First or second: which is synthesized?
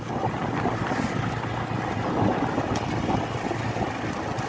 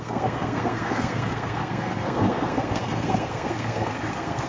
second